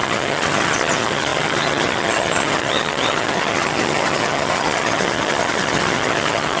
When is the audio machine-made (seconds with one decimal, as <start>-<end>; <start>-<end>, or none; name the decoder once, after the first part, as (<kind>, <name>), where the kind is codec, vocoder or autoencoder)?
0.0-6.6 (vocoder, HiFi-GAN)